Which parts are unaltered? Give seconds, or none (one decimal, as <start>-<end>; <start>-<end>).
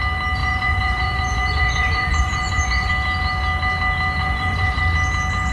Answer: 0.0-0.4; 2.9-4.2; 4.8-5.5